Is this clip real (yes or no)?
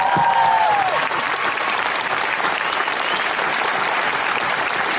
no